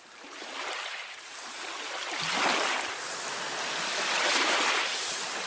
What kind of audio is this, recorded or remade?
recorded